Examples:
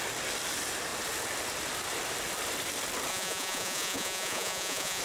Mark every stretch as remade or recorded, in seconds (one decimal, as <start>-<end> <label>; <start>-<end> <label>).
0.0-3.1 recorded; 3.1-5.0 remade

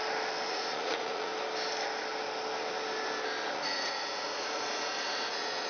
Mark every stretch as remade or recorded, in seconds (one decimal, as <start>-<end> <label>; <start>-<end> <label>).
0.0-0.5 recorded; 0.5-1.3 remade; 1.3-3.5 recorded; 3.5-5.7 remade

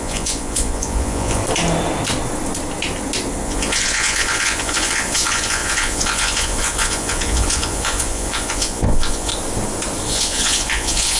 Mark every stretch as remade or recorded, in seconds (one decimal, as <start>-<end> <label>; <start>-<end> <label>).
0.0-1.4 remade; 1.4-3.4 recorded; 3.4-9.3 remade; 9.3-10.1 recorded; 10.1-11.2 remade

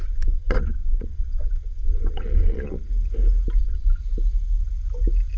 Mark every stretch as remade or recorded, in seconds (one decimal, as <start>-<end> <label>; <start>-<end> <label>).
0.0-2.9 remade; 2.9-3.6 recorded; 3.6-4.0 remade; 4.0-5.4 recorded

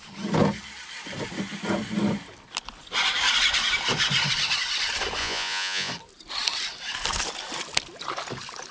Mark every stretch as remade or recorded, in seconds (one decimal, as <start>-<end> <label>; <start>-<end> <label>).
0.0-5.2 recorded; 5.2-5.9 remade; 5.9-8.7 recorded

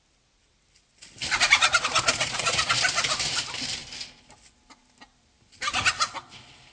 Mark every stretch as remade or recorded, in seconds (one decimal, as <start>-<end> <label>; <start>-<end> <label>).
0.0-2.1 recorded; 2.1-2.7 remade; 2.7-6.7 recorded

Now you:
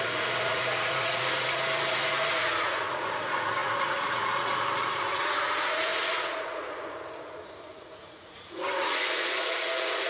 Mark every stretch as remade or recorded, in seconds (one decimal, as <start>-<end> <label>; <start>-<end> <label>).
0.0-10.1 remade